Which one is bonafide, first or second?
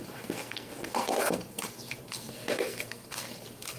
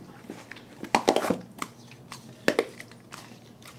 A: second